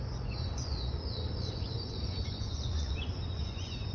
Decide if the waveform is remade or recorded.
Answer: remade